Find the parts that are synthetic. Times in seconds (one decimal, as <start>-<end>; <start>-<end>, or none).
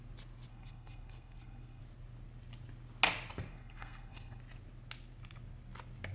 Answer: 0.5-1.8; 3.5-4.4